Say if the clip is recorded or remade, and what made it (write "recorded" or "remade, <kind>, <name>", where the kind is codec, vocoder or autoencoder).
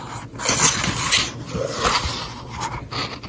recorded